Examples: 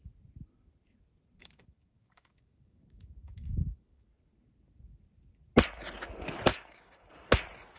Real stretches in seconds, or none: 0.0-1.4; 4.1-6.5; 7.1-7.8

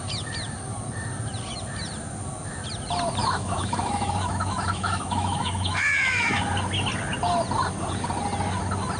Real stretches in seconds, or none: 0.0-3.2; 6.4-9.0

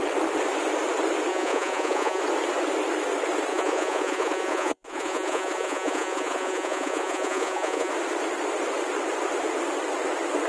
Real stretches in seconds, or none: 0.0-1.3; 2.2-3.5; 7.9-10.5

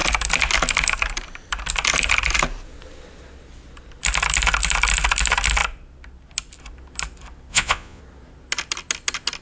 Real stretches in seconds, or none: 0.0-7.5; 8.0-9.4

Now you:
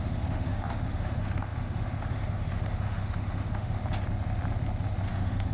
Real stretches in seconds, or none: 3.8-5.1

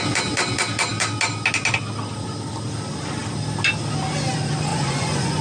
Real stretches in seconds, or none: 0.0-4.7

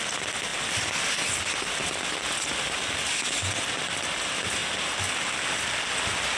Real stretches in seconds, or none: 0.0-6.4

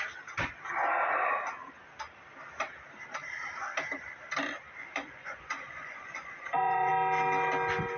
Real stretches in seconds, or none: 0.0-4.8; 6.9-8.0